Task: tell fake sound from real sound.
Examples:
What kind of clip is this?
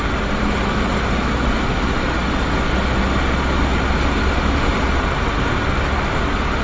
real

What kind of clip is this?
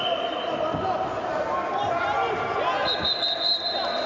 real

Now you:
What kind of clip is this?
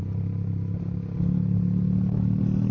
real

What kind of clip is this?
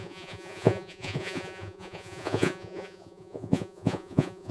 fake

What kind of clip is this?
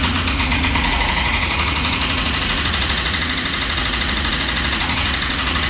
fake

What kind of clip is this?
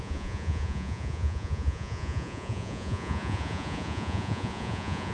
fake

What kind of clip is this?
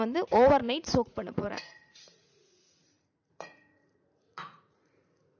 fake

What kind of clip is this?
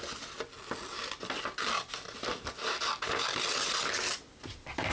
real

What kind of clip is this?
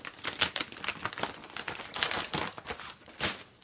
real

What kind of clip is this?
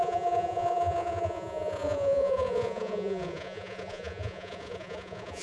fake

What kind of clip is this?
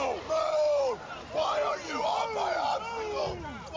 real